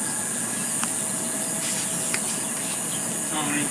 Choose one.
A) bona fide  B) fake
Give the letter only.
A